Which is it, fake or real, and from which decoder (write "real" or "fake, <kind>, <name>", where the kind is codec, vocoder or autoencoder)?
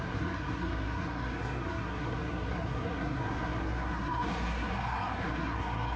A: fake, codec, SNAC